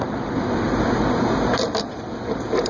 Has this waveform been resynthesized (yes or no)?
yes